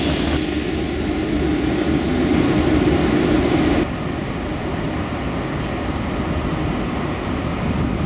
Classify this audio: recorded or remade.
recorded